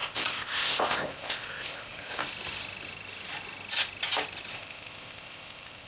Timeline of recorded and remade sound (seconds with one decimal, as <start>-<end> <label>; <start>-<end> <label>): 0.0-2.2 remade; 2.2-4.5 recorded; 4.5-5.9 remade

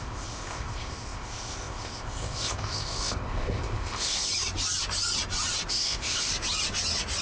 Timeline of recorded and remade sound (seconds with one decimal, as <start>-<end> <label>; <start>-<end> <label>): 0.0-4.3 remade; 4.3-5.7 recorded; 5.7-6.3 remade; 6.3-7.2 recorded